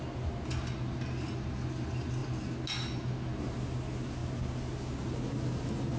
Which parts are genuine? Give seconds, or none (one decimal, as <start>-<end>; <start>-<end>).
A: 0.0-6.0